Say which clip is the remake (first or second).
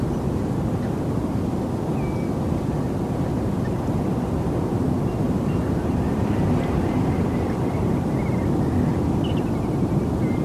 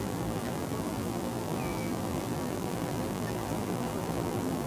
second